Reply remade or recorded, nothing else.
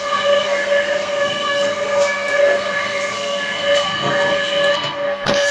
remade